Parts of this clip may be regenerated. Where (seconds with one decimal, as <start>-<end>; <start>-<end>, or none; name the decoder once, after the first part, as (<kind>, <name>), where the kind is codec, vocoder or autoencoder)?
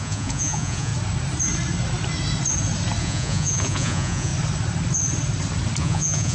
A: 0.0-0.9 (vocoder, Vocos); 3.0-4.3; 5.8-6.3